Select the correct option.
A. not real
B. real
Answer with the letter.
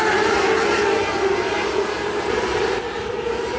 A